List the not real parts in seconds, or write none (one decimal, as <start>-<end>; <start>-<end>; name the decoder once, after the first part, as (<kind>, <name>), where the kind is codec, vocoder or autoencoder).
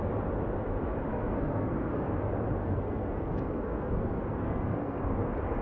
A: 1.1-2.1 (codec, SNAC); 2.6-5.0